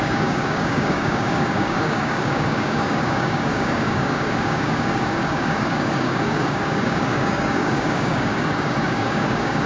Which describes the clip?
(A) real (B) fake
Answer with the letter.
B